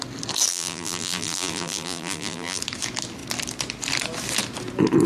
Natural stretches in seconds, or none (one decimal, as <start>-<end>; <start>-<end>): 0.0-0.5; 2.6-5.1